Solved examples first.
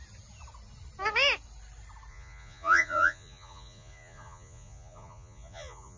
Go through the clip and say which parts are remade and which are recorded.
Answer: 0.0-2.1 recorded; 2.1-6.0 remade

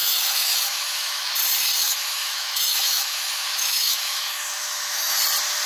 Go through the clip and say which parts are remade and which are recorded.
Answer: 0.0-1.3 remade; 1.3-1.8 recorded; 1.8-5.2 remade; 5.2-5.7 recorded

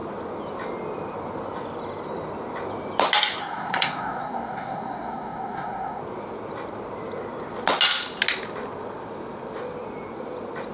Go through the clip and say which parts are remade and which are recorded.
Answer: 0.0-3.4 recorded; 3.4-6.0 remade; 6.0-10.7 recorded

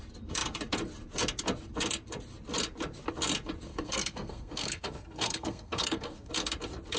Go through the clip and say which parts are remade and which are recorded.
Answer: 0.0-3.7 recorded; 3.7-6.3 remade; 6.3-7.0 recorded

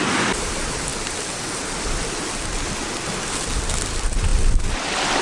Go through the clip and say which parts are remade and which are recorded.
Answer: 0.0-5.2 recorded

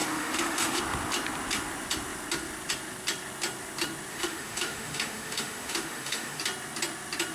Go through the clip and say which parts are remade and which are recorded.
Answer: 0.0-0.8 remade; 0.8-4.1 recorded; 4.1-6.4 remade; 6.4-7.3 recorded

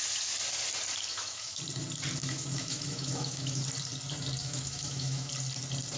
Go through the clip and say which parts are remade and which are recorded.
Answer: 0.0-1.1 recorded; 1.1-1.6 remade; 1.6-2.2 recorded; 2.2-3.6 remade; 3.6-4.4 recorded; 4.4-5.3 remade; 5.3-6.0 recorded

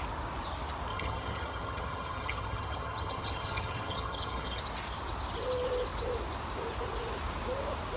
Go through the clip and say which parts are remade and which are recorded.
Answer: 0.0-0.9 recorded; 0.9-4.6 remade; 4.6-8.0 recorded